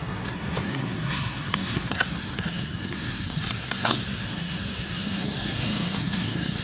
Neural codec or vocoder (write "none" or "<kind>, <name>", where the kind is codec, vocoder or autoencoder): codec, SNAC